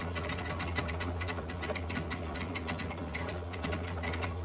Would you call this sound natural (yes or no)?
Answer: no